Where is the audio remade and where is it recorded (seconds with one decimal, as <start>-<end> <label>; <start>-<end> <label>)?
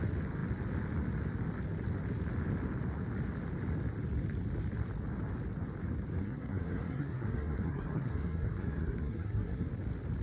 0.0-6.2 recorded; 6.2-9.7 remade; 9.7-10.2 recorded